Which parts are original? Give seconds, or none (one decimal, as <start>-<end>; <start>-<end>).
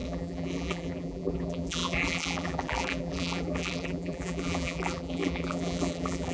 none